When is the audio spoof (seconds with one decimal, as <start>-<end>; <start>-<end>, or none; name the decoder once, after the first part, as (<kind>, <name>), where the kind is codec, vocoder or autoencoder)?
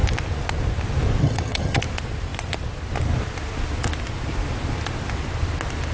1.2-1.8 (vocoder, HiFi-GAN)